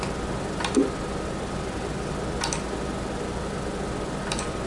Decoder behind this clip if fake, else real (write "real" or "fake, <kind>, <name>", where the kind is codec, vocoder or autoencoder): real